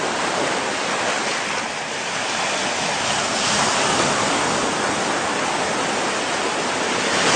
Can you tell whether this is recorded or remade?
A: recorded